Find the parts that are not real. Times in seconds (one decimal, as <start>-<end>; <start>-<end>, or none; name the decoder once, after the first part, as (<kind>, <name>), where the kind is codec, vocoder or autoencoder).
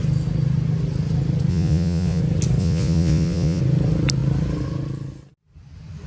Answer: 1.5-2.2 (vocoder, Vocos); 2.6-3.6